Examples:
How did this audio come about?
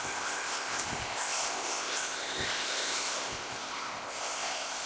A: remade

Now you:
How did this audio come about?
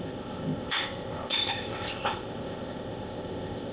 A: remade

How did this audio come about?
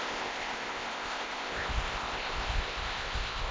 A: remade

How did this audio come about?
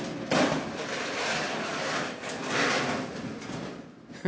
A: recorded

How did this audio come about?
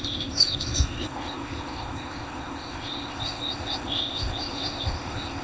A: remade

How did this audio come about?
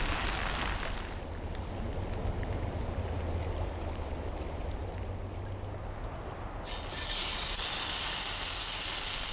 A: recorded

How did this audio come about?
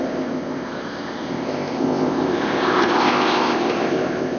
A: remade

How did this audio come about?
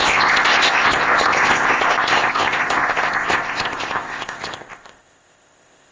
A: remade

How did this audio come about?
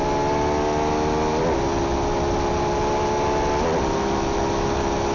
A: recorded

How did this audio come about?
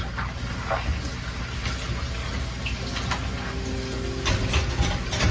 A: recorded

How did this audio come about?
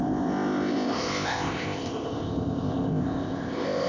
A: remade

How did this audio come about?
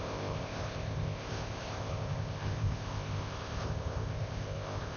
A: remade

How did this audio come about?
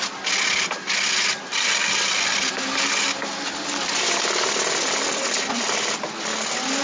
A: recorded